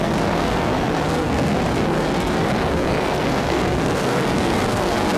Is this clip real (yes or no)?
no